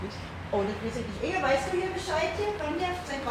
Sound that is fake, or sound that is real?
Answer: real